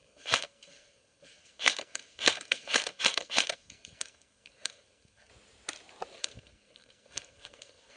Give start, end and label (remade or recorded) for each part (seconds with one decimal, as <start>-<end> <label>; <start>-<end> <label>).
0.0-5.3 remade; 5.3-6.2 recorded; 6.2-8.0 remade